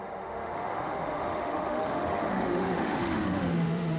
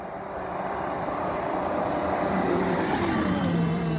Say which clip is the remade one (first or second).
first